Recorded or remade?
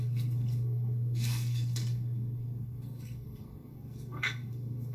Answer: remade